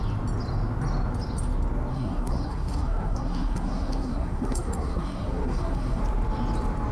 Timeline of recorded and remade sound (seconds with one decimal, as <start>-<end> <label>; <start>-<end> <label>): 0.0-1.9 recorded; 1.9-6.0 remade; 6.0-6.9 recorded